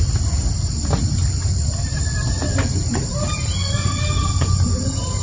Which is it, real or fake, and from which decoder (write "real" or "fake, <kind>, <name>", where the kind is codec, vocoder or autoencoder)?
real